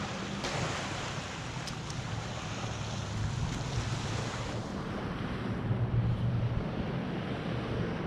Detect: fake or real real